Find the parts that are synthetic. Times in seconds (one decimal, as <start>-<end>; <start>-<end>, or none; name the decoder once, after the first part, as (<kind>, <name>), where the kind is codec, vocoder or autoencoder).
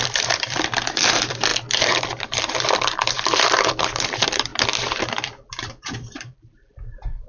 0.0-4.5 (vocoder, BigVGAN v2); 5.1-7.3